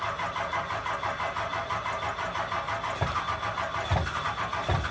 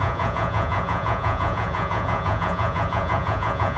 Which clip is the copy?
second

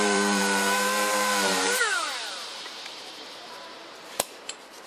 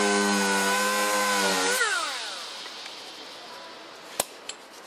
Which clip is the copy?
first